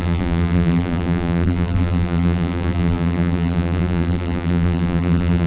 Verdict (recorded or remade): remade